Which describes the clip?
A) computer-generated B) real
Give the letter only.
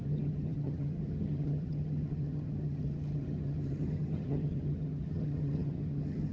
A